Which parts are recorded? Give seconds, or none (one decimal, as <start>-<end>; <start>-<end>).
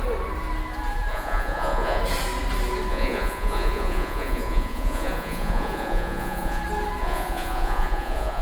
0.0-1.1; 2.0-2.9; 6.6-7.0